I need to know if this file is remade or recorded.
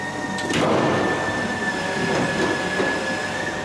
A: recorded